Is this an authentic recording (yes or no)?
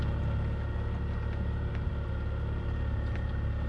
yes